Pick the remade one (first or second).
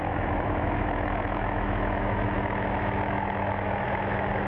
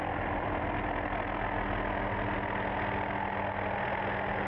first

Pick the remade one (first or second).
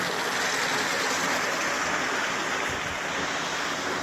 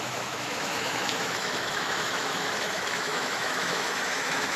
second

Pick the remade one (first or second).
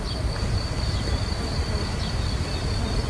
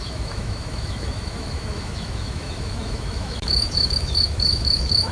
second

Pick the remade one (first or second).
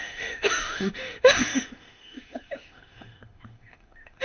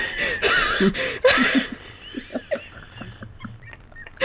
first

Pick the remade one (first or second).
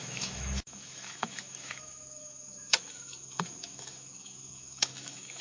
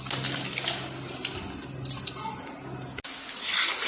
first